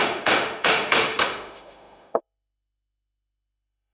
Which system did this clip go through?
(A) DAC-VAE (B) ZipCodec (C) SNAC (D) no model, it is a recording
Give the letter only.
A